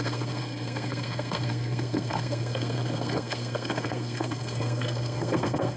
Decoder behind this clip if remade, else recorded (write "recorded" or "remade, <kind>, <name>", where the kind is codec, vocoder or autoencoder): remade, codec, SNAC